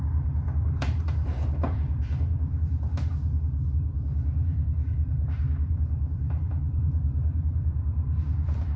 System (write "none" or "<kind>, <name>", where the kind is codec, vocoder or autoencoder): vocoder, BigVGAN v2